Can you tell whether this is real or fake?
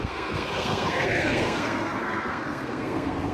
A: fake